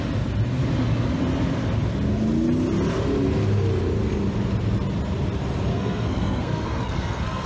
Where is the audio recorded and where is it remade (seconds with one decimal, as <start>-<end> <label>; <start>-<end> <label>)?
0.0-5.7 recorded; 5.7-7.5 remade